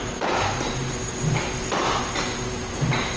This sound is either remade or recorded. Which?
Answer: recorded